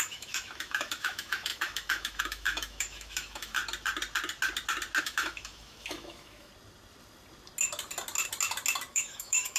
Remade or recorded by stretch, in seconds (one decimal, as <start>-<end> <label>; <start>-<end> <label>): 0.0-3.6 remade; 3.6-5.0 recorded; 5.0-6.5 remade; 6.5-8.9 recorded; 8.9-9.6 remade